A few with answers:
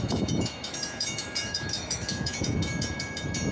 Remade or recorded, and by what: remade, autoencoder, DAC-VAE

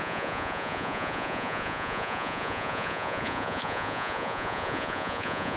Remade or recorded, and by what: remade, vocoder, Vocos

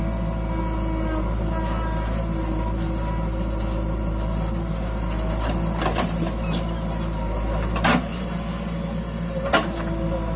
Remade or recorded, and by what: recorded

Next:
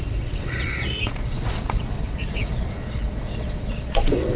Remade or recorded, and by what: remade, vocoder, Vocos